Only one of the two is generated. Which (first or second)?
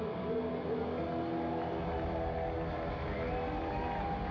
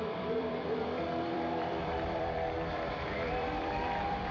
second